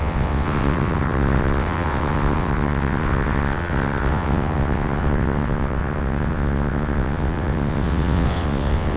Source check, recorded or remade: remade